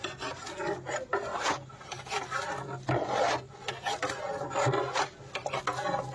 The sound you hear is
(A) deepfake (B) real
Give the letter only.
B